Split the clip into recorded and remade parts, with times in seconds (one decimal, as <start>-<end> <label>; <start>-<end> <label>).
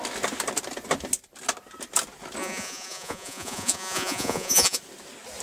0.0-2.4 recorded; 2.4-4.8 remade; 4.8-5.4 recorded